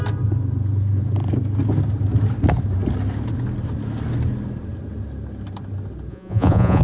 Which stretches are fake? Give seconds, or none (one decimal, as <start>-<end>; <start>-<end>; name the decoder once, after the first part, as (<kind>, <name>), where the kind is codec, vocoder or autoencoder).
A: 6.1-6.8 (vocoder, Vocos)